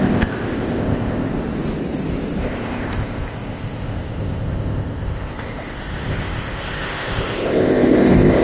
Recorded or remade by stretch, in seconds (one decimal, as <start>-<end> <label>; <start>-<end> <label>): 0.0-1.3 remade; 1.3-2.4 recorded; 2.4-8.4 remade